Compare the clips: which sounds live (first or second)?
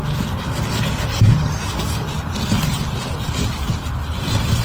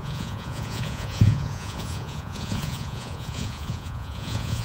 first